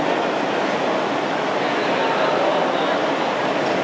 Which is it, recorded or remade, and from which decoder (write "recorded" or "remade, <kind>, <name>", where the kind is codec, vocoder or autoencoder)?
recorded